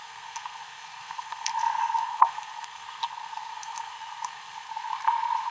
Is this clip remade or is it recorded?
remade